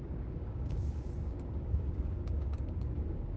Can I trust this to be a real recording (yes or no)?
no